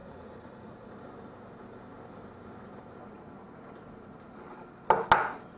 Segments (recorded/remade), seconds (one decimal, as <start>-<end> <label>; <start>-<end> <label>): 0.0-0.9 remade; 0.9-5.6 recorded